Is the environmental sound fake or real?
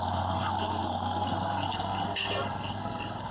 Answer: fake